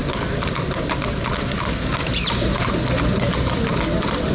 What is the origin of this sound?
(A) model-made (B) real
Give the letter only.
B